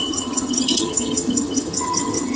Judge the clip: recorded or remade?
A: remade